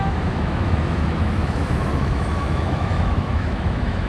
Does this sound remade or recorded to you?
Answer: remade